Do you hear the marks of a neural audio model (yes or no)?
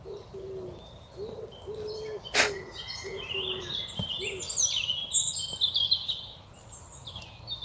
no